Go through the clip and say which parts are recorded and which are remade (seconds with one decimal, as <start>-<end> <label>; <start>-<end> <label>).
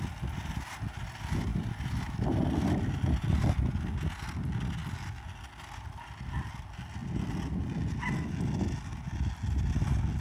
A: 0.0-1.5 recorded; 1.5-3.8 remade; 3.8-4.8 recorded; 4.8-5.4 remade; 5.4-10.2 recorded